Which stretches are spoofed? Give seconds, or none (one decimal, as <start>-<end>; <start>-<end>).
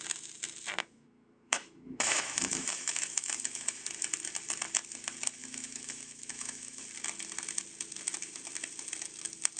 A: 0.8-3.8; 5.4-6.8